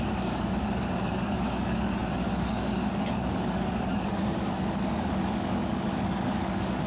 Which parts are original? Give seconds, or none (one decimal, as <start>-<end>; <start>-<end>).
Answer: none